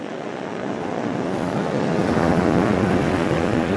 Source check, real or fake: fake